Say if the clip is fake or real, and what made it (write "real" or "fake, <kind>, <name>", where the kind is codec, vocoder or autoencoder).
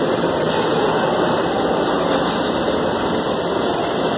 real